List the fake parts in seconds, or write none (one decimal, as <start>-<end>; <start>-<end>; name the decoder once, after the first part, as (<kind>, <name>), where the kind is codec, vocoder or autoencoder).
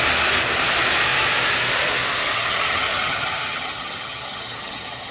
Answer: 2.3-5.1 (vocoder, HiFi-GAN)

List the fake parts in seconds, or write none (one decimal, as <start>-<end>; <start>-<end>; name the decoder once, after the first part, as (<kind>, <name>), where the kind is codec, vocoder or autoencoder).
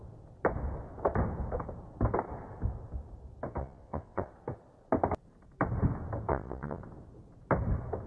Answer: 3.6-4.3 (vocoder, WaveNeXt); 6.3-6.8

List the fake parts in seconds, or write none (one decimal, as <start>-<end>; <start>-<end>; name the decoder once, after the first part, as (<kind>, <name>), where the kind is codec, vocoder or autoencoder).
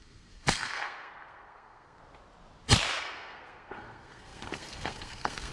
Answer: 0.0-2.0 (codec, SNAC); 3.0-5.5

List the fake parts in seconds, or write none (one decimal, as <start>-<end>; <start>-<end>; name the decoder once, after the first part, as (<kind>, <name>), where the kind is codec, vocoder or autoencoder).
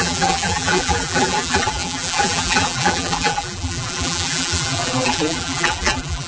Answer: 0.0-6.3 (vocoder, BigVGAN v2)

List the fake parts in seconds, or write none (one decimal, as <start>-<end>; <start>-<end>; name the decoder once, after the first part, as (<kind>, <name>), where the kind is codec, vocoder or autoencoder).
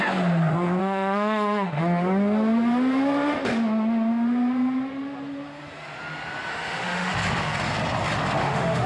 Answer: 0.8-1.8 (autoencoder, DAC-VAE); 6.5-7.1; 8.4-8.9